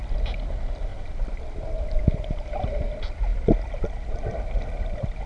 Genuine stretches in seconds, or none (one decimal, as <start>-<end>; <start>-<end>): 0.0-5.3